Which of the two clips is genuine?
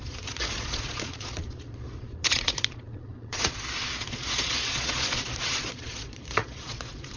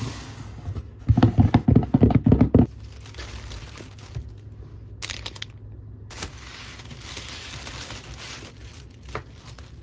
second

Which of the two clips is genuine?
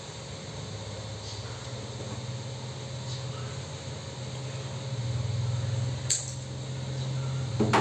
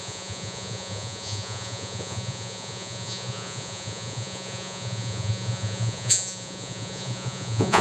first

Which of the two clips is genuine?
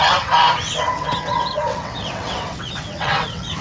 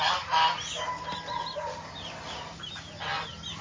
second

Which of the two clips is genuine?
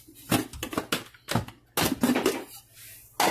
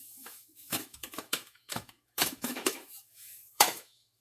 first